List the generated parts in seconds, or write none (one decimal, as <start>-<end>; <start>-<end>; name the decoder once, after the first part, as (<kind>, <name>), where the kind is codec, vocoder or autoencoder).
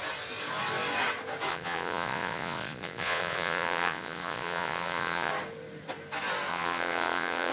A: 1.5-5.3 (vocoder, Vocos); 6.5-7.5